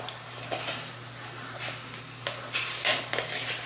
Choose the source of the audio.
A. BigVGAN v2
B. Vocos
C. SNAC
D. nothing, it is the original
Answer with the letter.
D